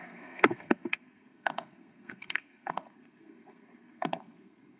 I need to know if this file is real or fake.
fake